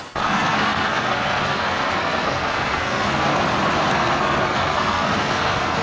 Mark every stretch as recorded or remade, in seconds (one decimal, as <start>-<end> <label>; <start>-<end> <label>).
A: 0.0-3.4 remade; 3.4-3.9 recorded; 3.9-5.8 remade